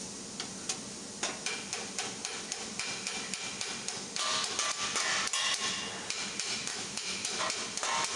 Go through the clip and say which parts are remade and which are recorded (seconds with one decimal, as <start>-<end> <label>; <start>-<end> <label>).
0.0-6.7 recorded; 6.7-7.4 remade; 7.4-8.2 recorded